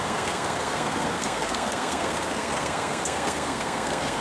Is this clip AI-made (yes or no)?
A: yes